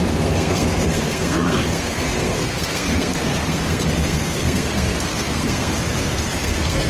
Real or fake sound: fake